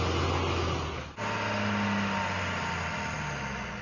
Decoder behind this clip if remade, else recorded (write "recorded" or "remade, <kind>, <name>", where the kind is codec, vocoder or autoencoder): recorded